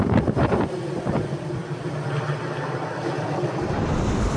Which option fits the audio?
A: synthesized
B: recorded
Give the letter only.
B